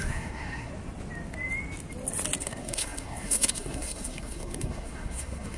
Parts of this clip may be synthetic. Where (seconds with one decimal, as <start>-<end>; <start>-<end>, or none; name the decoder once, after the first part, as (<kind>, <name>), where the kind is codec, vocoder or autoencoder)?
0.0-0.7 (codec, SNAC); 2.4-5.6